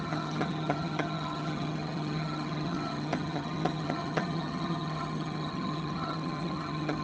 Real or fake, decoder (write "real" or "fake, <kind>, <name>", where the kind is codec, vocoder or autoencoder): fake, vocoder, HiFi-GAN